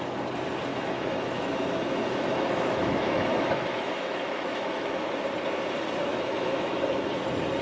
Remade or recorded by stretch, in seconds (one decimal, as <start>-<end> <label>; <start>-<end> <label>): 0.0-0.7 recorded; 0.7-5.1 remade; 5.1-6.1 recorded; 6.1-6.8 remade; 6.8-7.6 recorded